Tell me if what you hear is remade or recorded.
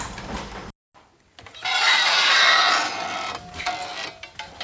recorded